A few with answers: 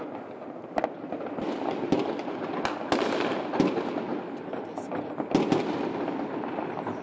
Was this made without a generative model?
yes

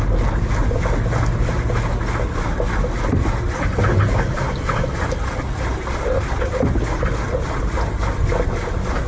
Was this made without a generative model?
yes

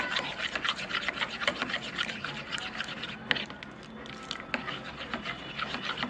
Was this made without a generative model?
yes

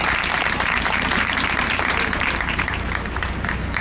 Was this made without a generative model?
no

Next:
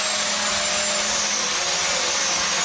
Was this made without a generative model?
yes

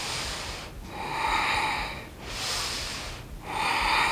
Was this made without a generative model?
yes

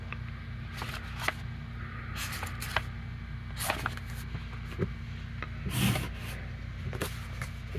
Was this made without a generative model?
yes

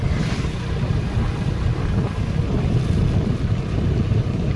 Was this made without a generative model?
yes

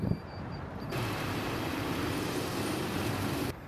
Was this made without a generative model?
no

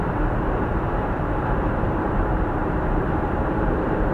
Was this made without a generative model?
no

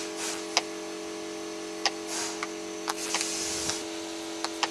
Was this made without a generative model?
yes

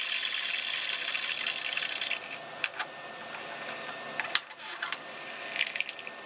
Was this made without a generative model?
yes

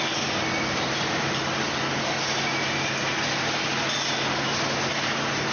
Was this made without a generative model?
yes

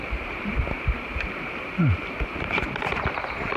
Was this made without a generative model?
no